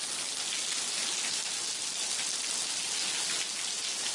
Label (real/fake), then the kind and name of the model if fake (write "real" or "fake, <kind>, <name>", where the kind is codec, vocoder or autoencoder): real